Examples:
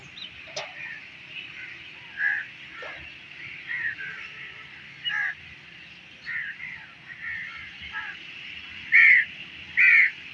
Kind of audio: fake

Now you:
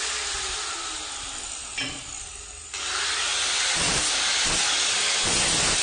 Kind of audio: real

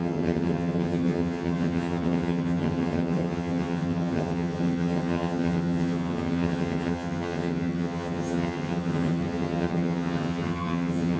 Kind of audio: fake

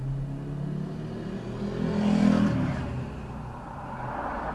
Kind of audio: real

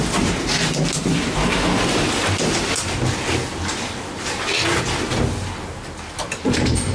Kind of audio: real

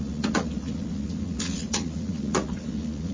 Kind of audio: fake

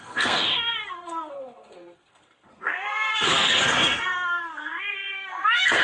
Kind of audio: fake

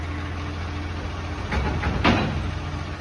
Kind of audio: real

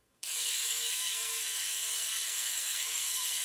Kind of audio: fake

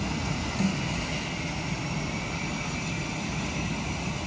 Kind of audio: real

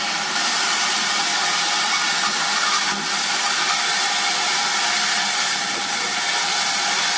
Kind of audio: real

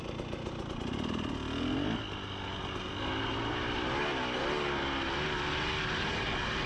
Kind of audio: real